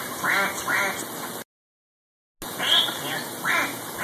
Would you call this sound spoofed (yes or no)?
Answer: no